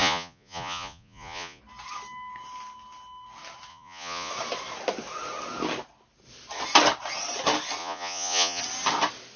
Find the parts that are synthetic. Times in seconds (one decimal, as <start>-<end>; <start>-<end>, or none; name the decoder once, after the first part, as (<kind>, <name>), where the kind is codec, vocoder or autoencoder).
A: 0.0-1.6 (vocoder, Vocos); 3.7-4.3; 7.8-8.6